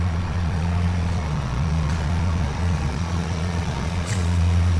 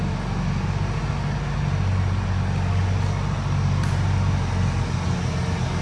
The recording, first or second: second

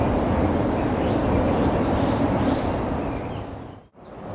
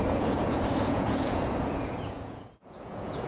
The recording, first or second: first